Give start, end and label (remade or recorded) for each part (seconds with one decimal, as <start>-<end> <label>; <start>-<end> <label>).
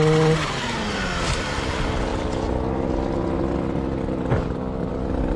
0.0-5.4 recorded